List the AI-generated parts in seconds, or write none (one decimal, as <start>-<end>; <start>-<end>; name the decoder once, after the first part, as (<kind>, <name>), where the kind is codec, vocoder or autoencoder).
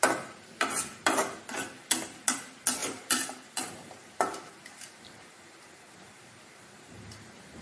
2.8-7.6 (vocoder, BigVGAN v2)